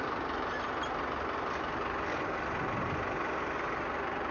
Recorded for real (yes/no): yes